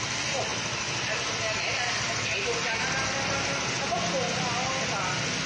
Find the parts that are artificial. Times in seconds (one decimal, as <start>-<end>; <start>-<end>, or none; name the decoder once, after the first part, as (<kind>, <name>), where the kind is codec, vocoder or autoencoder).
none